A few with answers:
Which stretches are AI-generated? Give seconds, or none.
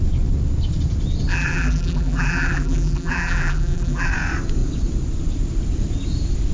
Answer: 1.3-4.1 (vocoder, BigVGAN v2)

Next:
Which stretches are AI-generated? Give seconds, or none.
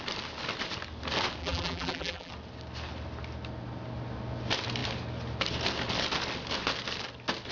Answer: 1.4-2.3 (vocoder, BigVGAN v2)